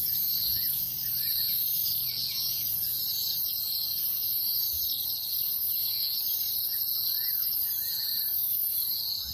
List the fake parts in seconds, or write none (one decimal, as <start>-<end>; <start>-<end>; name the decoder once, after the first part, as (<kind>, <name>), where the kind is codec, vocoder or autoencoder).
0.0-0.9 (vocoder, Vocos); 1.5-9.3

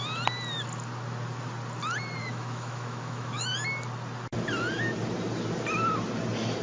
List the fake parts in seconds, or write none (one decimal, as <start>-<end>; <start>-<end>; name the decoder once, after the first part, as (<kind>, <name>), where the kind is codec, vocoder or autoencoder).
2.2-3.5 (autoencoder, DAC-VAE)

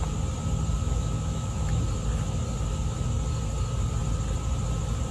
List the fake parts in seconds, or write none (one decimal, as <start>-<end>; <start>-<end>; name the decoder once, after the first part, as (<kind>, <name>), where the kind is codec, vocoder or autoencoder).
0.8-1.8 (autoencoder, DAC-VAE)

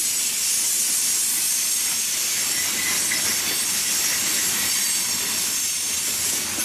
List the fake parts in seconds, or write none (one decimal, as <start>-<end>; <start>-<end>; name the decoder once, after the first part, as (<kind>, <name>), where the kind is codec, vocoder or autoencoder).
none

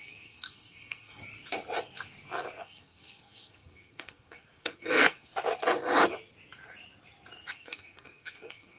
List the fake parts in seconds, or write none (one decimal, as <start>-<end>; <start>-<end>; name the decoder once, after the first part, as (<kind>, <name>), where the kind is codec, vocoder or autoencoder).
0.0-1.2 (codec, SNAC); 2.6-5.3; 7.5-8.8

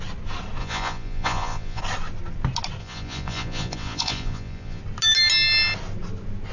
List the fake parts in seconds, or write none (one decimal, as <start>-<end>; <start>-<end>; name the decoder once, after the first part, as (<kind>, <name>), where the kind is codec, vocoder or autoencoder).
0.6-1.8 (vocoder, Vocos); 2.8-4.8